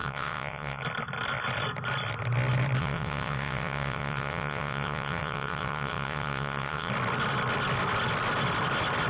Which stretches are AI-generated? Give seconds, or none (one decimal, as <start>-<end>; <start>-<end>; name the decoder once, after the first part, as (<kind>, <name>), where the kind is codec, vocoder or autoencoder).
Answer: 0.0-0.8 (vocoder, WaveNeXt); 2.8-6.9